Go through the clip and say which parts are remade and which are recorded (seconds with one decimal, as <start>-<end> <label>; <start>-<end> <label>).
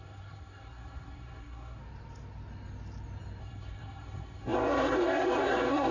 0.0-1.8 remade; 1.8-3.4 recorded; 3.4-5.9 remade